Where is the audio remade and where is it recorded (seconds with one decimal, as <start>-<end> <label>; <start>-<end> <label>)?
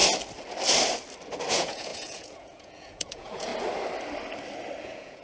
0.0-1.5 recorded; 1.5-3.5 remade; 3.5-4.8 recorded; 4.8-5.2 remade